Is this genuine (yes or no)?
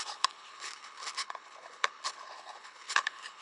no